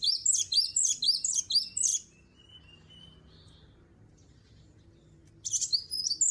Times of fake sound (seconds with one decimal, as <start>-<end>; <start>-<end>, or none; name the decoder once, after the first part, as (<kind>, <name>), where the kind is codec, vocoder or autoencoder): none